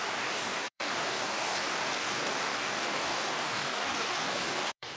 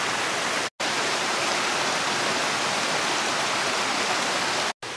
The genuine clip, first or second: second